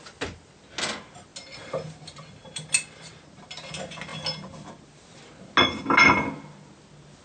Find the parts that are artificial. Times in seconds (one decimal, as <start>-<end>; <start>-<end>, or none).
none